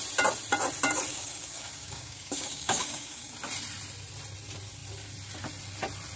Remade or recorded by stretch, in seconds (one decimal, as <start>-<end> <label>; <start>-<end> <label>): 0.0-1.1 recorded; 1.1-3.3 remade; 3.3-6.2 recorded